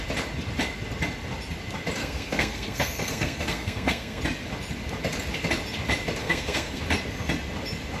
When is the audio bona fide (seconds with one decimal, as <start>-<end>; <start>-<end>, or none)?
0.0-2.0; 4.2-6.2; 6.8-8.0